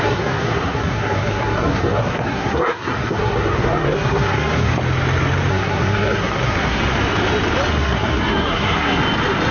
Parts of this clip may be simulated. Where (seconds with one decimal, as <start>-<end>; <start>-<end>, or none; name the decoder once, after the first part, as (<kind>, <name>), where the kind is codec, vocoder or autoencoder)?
0.0-4.7 (codec, SNAC); 5.5-6.8; 7.7-9.0